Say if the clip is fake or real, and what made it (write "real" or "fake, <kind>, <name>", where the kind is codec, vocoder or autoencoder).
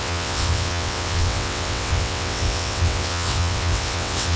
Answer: fake, vocoder, WaveNeXt